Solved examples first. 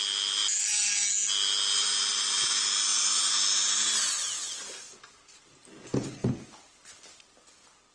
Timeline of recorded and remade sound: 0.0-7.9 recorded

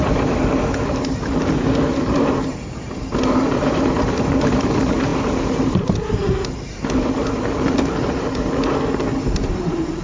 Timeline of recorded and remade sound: 0.0-10.0 recorded

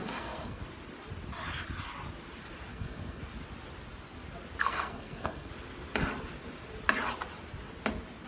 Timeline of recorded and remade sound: 0.0-0.6 remade; 0.6-2.7 recorded; 2.7-3.2 remade; 3.2-4.6 recorded; 4.6-5.5 remade; 5.5-8.3 recorded

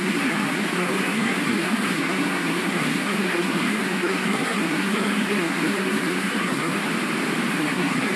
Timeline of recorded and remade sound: 0.0-6.9 remade; 6.9-7.5 recorded; 7.5-8.2 remade

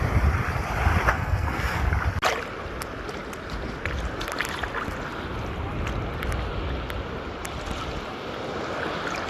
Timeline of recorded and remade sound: 0.0-1.1 recorded; 1.1-1.9 remade; 1.9-9.3 recorded

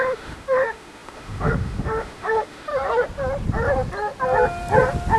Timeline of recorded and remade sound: 0.0-2.7 remade; 2.7-5.2 recorded

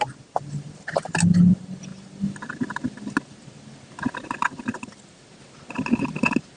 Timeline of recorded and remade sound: 0.0-6.6 recorded